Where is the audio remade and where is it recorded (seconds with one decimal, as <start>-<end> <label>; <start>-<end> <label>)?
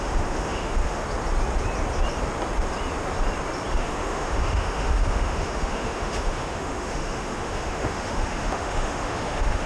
0.0-1.0 remade; 1.0-3.7 recorded; 3.7-9.7 remade